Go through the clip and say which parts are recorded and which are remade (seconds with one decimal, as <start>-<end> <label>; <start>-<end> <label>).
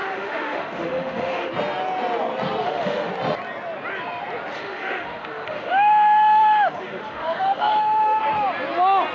0.0-1.5 remade; 1.5-2.6 recorded; 2.6-3.1 remade; 3.1-4.5 recorded; 4.5-8.2 remade; 8.2-9.1 recorded